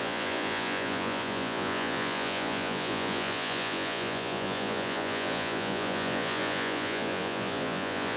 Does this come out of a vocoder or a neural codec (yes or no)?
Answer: yes